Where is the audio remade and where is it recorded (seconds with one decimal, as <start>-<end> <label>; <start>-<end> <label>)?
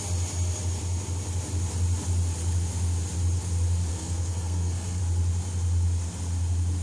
0.0-3.9 recorded; 3.9-5.0 remade; 5.0-6.8 recorded